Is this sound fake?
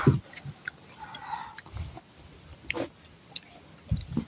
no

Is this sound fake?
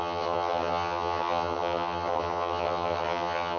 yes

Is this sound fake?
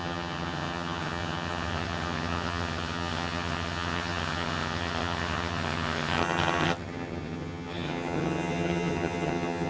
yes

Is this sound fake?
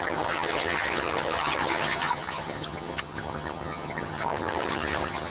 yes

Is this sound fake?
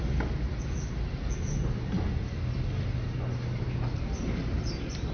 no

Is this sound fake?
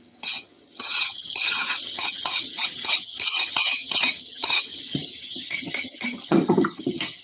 yes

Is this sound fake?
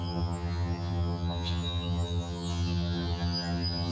yes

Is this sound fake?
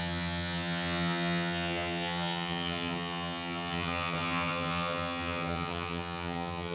yes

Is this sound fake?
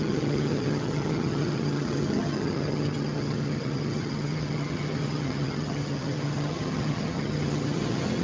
yes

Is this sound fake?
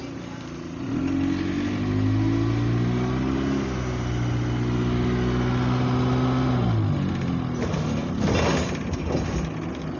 no